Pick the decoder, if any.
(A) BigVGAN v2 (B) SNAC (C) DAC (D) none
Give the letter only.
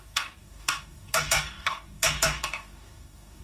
C